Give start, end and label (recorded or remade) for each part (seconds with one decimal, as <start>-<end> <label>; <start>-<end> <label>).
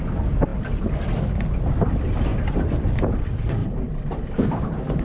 0.0-3.6 recorded; 3.6-4.6 remade; 4.6-5.0 recorded